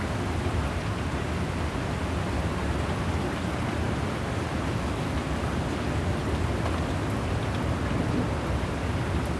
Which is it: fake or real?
real